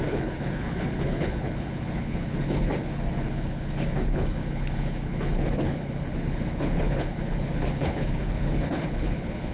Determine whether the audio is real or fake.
fake